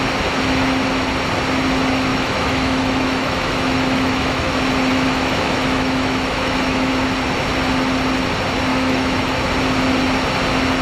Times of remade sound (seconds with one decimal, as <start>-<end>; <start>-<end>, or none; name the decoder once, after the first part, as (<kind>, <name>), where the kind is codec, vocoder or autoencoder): 2.1-4.5 (autoencoder, DAC-VAE); 4.9-6.9; 8.7-9.3